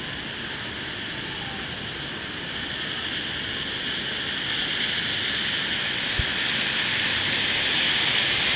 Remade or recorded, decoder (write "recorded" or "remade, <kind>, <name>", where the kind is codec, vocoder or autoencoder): recorded